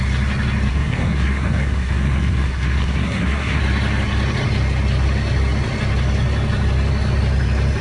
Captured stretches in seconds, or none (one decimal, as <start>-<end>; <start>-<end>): 0.0-0.7; 3.6-7.8